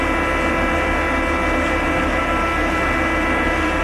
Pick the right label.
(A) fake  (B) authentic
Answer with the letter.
B